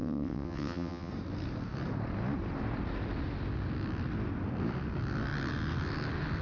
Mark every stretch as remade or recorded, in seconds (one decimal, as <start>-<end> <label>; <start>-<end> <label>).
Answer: 0.0-1.1 remade; 1.1-6.4 recorded